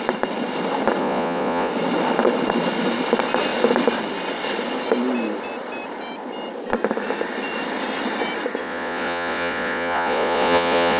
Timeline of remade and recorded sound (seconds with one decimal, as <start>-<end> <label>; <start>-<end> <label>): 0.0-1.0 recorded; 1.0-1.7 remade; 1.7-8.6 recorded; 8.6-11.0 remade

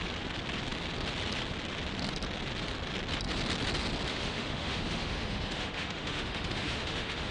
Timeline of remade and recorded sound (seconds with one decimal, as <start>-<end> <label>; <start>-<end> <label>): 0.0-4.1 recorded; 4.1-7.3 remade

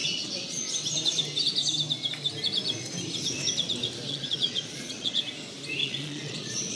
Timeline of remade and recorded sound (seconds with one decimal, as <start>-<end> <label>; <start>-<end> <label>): 0.0-0.7 remade; 0.7-4.1 recorded; 4.1-5.2 remade; 5.2-5.8 recorded; 5.8-6.8 remade

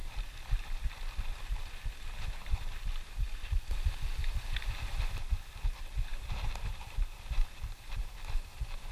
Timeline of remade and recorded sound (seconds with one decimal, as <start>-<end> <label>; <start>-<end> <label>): 0.0-8.9 recorded

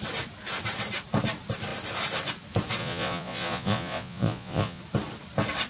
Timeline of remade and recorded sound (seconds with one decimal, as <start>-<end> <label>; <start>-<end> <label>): 0.0-2.8 recorded; 2.8-4.8 remade; 4.8-5.7 recorded

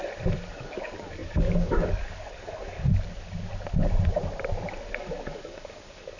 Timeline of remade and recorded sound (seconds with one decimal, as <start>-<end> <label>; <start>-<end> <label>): 0.0-0.5 recorded; 0.5-2.9 remade; 2.9-4.9 recorded; 4.9-6.2 remade

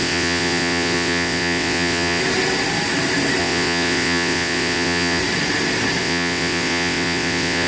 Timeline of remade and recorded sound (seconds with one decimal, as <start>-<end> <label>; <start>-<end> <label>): 0.0-2.2 remade; 2.2-3.4 recorded; 3.4-5.2 remade; 5.2-6.0 recorded; 6.0-7.7 remade